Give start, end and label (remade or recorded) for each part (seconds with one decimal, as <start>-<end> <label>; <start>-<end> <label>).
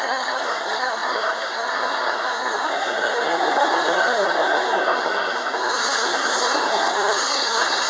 0.0-7.9 remade